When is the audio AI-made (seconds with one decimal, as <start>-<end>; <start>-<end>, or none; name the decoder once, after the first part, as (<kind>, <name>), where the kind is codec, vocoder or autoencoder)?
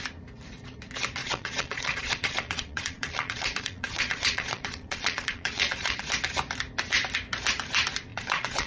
1.2-6.0 (vocoder, Vocos); 8.1-8.7